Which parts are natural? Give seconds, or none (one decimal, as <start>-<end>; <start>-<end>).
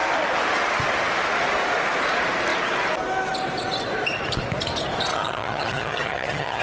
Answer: 0.0-5.1